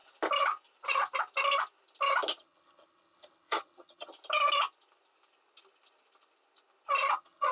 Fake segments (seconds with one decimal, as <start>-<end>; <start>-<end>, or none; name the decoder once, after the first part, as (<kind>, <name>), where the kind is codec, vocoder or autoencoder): 2.4-4.1 (vocoder, HiFi-GAN); 7.1-7.5